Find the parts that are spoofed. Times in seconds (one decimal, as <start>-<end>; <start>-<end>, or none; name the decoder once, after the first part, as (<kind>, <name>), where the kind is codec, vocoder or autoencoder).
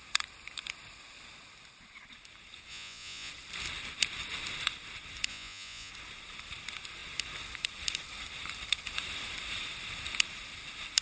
2.7-3.3 (vocoder, Vocos); 5.3-5.9